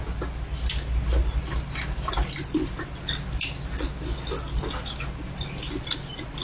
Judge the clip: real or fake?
real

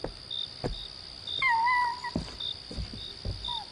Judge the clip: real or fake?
real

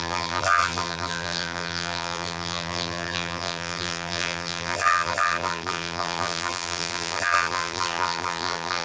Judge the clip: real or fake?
fake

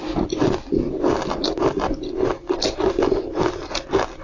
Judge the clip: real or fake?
real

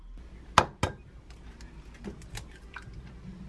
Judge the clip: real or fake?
real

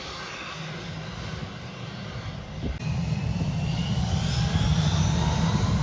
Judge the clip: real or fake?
real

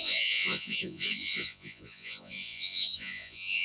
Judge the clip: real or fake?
fake